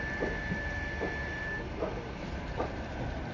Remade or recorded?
recorded